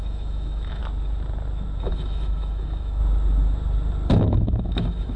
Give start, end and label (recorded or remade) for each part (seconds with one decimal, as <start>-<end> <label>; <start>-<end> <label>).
0.0-0.8 remade; 0.8-1.8 recorded; 1.8-3.0 remade; 3.0-4.1 recorded; 4.1-5.2 remade